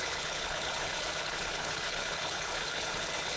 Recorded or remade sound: remade